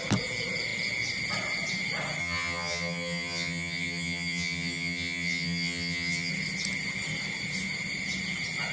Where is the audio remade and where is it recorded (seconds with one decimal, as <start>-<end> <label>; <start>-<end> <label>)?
0.0-2.2 recorded; 2.2-6.3 remade; 6.3-8.7 recorded